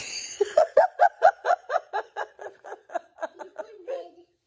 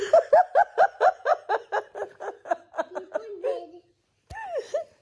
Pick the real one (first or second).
second